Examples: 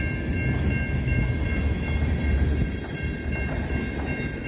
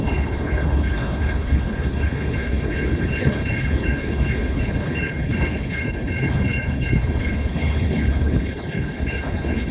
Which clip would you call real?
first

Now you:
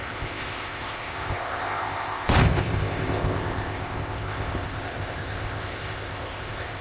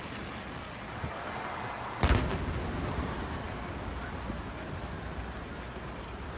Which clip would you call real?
second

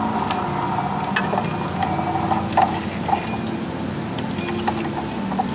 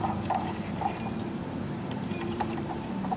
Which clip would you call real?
first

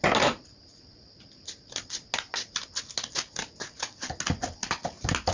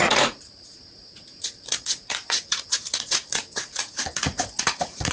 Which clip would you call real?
first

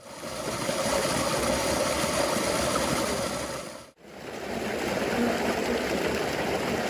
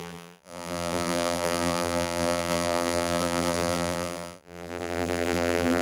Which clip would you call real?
first